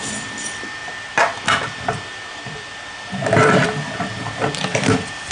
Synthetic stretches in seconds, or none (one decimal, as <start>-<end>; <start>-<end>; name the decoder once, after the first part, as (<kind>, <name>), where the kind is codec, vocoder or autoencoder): 0.0-5.3 (vocoder, BigVGAN v2)